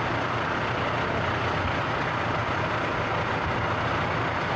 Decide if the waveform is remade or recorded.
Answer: recorded